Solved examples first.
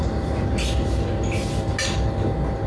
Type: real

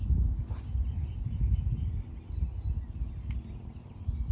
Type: real